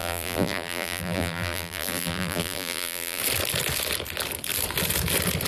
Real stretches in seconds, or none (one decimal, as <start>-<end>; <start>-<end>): 3.2-5.5